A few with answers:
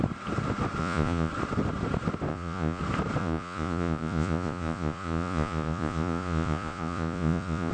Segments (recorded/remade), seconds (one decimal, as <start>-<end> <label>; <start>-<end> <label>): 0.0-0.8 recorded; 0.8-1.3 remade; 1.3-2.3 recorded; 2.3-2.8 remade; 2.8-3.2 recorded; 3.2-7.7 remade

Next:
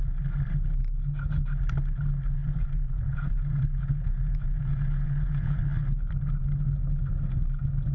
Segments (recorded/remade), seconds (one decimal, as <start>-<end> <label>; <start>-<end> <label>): 0.0-2.4 recorded; 2.4-5.6 remade; 5.6-7.9 recorded

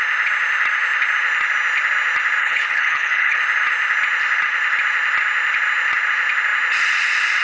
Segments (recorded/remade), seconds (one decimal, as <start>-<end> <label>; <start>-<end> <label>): 0.0-2.4 recorded; 2.4-3.4 remade; 3.4-7.4 recorded